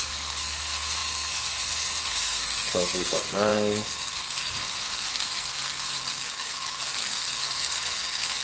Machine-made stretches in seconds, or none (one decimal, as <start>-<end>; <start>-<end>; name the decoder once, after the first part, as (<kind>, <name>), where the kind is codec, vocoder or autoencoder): 0.0-8.4 (codec, SNAC)